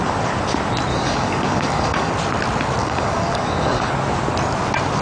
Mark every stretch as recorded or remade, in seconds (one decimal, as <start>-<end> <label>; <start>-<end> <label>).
0.0-0.9 recorded; 0.9-2.1 remade; 2.1-2.8 recorded; 2.8-3.9 remade; 3.9-5.0 recorded